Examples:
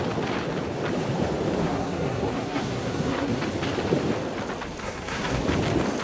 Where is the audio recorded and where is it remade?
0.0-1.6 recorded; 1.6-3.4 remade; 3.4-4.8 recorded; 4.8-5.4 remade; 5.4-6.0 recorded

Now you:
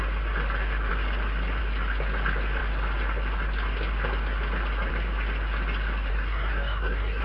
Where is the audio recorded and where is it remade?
0.0-6.1 recorded; 6.1-7.2 remade

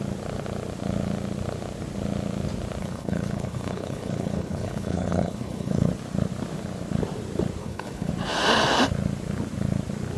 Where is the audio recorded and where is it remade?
0.0-2.8 recorded; 2.8-5.9 remade; 5.9-7.6 recorded; 7.6-8.1 remade; 8.1-10.2 recorded

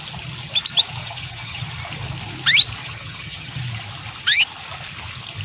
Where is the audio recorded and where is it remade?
0.0-1.0 recorded; 1.0-1.6 remade; 1.6-2.8 recorded; 2.8-3.6 remade; 3.6-5.4 recorded

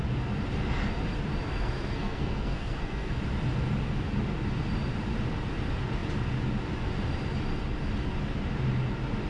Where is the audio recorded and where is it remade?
0.0-1.5 recorded; 1.5-3.2 remade; 3.2-9.3 recorded

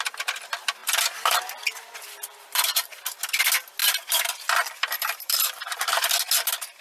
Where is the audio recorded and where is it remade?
0.0-0.8 recorded; 0.8-3.4 remade; 3.4-3.8 recorded; 3.8-6.1 remade; 6.1-6.8 recorded

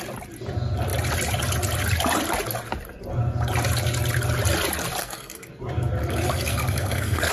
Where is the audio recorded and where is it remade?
0.0-5.0 recorded; 5.0-5.5 remade; 5.5-6.0 recorded; 6.0-7.3 remade